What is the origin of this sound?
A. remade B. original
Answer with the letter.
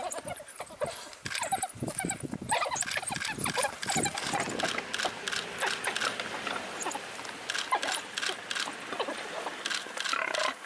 B